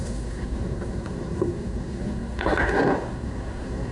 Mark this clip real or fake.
fake